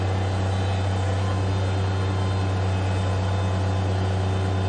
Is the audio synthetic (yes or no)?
no